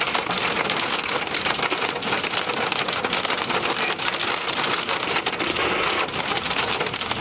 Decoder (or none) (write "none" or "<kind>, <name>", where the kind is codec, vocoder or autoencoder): none